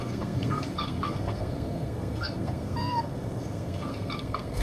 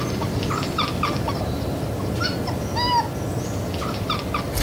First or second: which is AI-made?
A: first